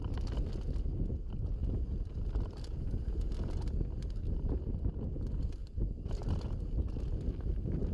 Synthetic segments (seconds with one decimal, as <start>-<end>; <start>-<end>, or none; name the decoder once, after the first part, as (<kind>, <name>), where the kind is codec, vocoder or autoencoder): none